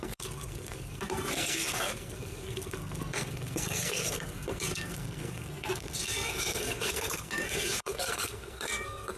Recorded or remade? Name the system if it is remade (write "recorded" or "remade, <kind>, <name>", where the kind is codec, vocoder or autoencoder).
remade, codec, SNAC